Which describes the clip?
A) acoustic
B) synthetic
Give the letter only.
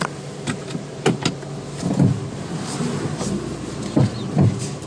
A